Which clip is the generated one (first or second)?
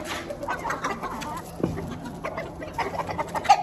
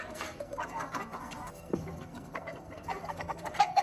second